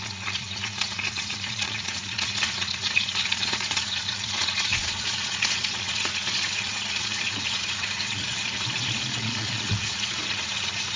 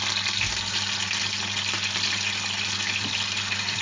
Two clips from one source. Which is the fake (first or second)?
first